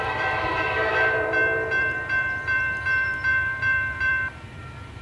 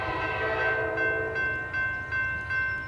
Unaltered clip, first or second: second